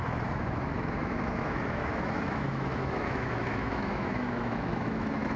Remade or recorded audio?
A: remade